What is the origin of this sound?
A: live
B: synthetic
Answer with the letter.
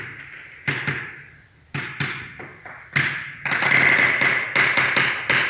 A